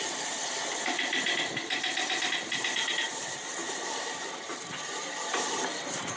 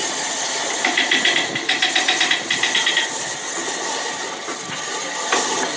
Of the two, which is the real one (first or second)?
second